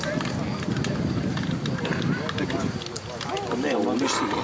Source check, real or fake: real